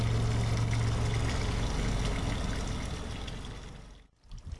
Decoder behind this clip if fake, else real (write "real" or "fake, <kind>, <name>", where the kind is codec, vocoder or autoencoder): real